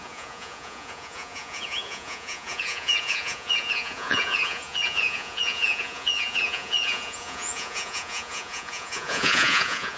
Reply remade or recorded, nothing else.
remade